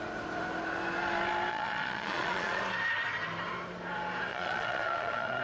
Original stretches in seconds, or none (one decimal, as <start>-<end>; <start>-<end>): 0.0-1.5; 2.6-4.3